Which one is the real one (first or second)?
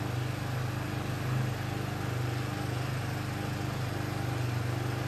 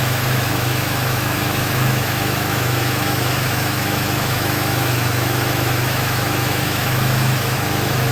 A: first